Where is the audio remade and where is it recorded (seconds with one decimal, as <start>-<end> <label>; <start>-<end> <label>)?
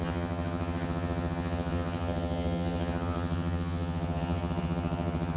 0.0-5.4 remade